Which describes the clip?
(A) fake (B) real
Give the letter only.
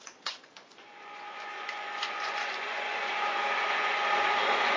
A